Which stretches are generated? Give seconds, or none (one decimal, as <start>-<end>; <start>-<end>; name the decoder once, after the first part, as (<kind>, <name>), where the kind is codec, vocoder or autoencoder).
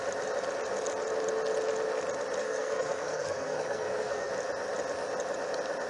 2.4-4.3 (codec, SNAC)